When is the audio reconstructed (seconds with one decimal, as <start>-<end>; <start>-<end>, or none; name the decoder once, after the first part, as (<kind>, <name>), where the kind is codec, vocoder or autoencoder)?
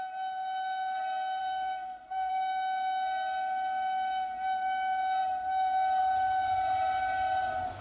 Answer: 1.4-2.3 (codec, SNAC)